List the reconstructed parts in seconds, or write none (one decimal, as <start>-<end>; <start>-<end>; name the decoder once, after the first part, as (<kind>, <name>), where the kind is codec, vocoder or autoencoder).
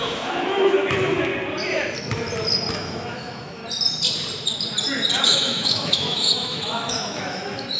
0.0-1.3 (autoencoder, DAC-VAE); 2.7-3.6; 5.2-7.8